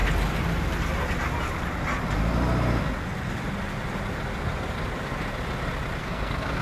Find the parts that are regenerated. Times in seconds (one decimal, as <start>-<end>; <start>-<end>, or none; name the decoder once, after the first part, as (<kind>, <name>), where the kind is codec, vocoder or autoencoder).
6.0-6.6 (codec, SNAC)